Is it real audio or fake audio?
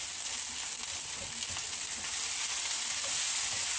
real